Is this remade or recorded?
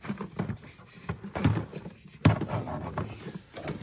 recorded